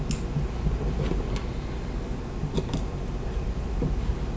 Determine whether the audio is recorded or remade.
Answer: recorded